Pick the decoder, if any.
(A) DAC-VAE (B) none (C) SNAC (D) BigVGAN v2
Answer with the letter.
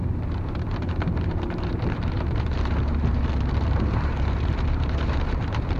D